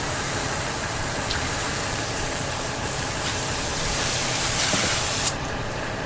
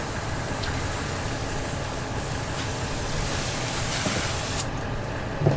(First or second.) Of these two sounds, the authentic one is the second